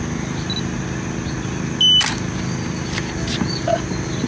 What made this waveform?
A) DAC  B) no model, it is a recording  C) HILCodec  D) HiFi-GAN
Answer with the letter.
B